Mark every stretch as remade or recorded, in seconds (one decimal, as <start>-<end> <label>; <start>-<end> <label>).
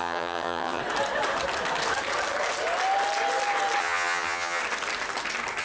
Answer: 0.0-0.8 remade; 0.8-3.8 recorded; 3.8-4.6 remade; 4.6-5.6 recorded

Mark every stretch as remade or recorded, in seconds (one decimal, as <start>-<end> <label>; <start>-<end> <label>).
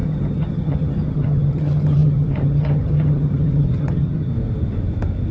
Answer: 0.0-4.3 remade; 4.3-5.3 recorded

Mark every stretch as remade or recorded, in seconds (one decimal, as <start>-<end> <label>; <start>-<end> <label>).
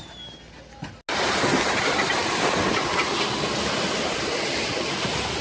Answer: 0.0-5.4 recorded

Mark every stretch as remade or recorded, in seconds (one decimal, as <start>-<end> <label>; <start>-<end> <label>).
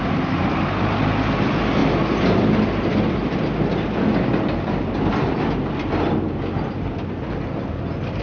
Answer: 0.0-8.2 recorded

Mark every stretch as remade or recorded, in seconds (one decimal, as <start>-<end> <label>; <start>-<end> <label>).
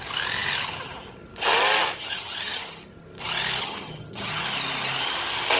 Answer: 0.0-2.0 recorded; 2.0-2.6 remade; 2.6-3.6 recorded; 3.6-4.4 remade; 4.4-5.6 recorded